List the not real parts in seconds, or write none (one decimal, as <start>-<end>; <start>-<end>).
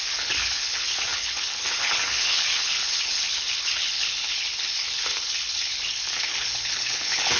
0.0-7.4